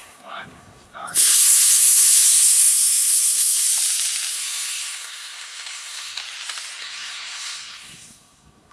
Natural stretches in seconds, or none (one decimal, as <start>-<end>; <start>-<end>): 3.7-4.3; 6.2-6.8